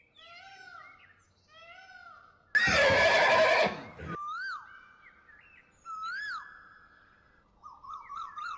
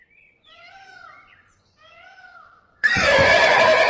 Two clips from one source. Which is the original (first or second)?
first